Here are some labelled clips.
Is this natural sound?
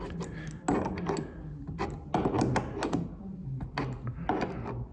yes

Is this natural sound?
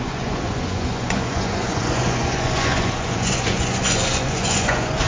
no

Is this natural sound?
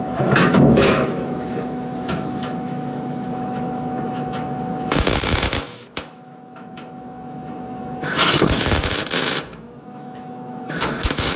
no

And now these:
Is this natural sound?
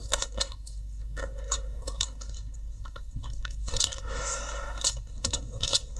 no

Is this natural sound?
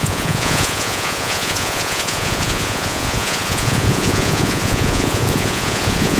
no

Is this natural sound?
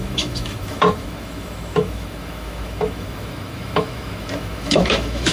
no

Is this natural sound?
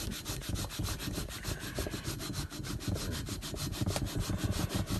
yes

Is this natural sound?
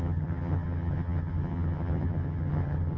no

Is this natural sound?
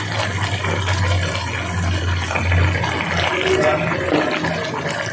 yes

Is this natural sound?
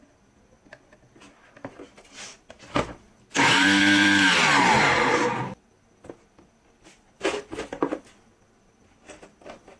yes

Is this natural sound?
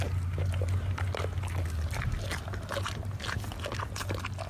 yes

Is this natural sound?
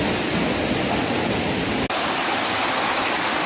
yes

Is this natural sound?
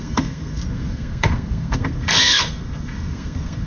no